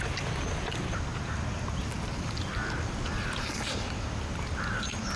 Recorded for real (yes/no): yes